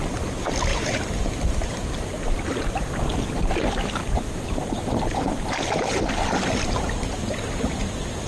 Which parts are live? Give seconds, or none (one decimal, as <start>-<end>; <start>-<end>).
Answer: 0.0-0.7; 2.6-8.3